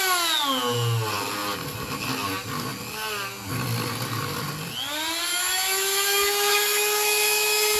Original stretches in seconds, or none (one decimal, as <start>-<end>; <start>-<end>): 0.0-5.3